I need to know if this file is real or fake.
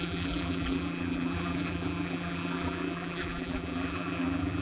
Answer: fake